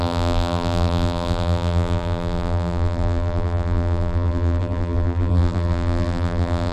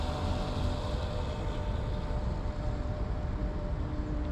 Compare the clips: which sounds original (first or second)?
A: second